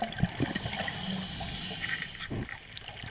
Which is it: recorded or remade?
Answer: recorded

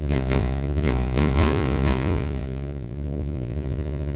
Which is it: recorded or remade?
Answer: remade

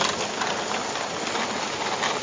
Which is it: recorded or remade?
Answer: recorded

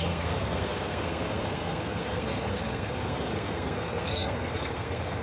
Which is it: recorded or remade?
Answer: remade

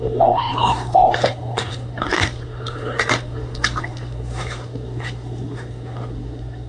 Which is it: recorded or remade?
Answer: remade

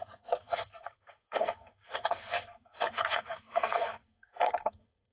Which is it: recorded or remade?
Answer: remade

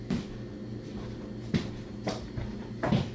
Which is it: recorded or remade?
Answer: recorded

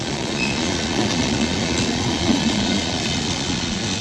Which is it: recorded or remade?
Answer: remade